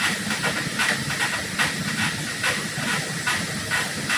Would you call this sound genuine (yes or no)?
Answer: yes